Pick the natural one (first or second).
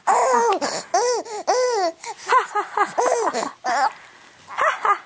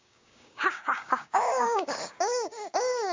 first